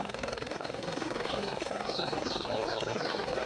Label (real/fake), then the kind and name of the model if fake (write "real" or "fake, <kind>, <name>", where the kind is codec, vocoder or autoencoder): fake, codec, SNAC